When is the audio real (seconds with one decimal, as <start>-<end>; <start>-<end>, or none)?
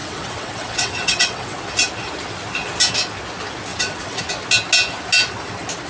1.6-3.7; 4.2-5.9